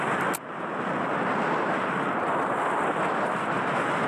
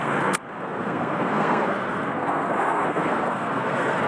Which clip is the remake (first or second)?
second